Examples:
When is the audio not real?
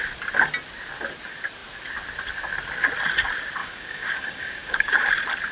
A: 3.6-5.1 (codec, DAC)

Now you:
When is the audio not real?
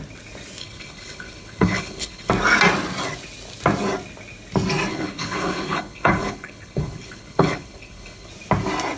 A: 0.6-2.3 (codec, HILCodec); 4.9-8.3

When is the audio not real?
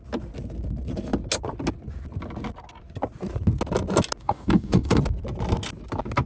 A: 4.2-5.0 (codec, DAC)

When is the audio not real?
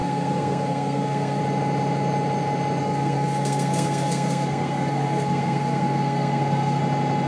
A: 0.0-1.4 (codec, SNAC); 2.8-6.8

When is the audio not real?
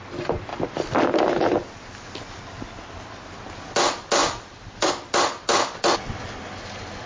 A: 0.5-1.0 (vocoder, BigVGAN v2); 4.2-4.9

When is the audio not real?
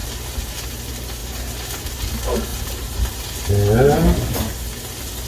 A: 2.5-3.5 (vocoder, BigVGAN v2)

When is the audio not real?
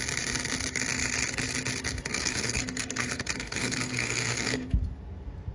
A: 2.1-4.7 (codec, SNAC)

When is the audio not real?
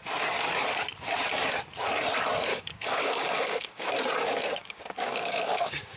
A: 2.5-3.9 (codec, DAC); 4.6-6.0